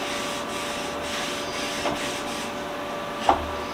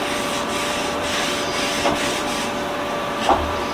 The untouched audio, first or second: first